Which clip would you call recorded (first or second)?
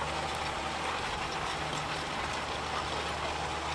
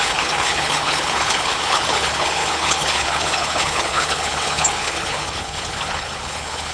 first